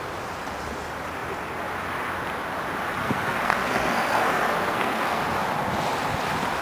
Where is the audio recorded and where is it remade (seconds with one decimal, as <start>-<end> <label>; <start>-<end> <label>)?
0.0-3.0 recorded; 3.0-5.2 remade; 5.2-6.6 recorded